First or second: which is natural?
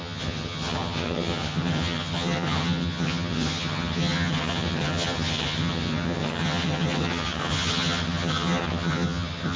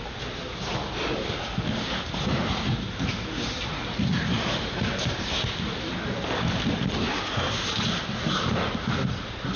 second